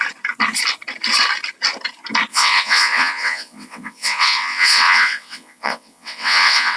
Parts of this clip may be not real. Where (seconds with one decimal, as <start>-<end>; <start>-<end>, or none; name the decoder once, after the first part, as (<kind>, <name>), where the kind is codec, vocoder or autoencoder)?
2.3-6.8 (vocoder, WaveNeXt)